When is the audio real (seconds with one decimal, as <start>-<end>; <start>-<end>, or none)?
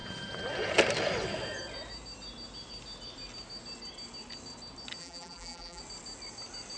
0.0-5.0; 5.8-6.8